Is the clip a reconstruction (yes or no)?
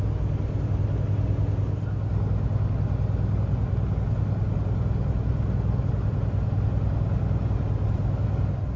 no